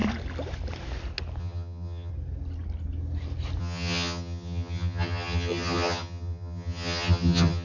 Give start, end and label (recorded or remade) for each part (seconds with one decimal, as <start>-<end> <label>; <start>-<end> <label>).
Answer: 0.0-1.4 recorded; 1.4-2.1 remade; 2.1-3.6 recorded; 3.6-7.6 remade